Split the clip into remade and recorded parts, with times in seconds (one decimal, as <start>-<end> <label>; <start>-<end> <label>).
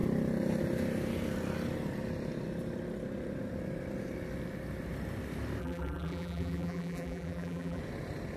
0.0-5.6 recorded; 5.6-7.8 remade; 7.8-8.4 recorded